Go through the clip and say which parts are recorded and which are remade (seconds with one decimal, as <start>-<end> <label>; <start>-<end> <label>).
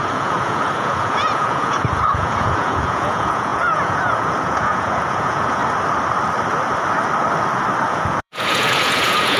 0.0-5.6 remade; 5.6-7.9 recorded; 7.9-9.4 remade